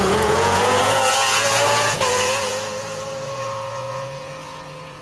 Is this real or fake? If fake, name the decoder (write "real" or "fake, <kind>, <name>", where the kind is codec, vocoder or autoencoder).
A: fake, vocoder, Vocos